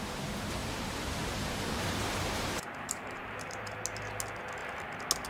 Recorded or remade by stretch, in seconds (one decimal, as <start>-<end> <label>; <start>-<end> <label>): 0.0-0.6 recorded; 0.6-3.8 remade; 3.8-5.3 recorded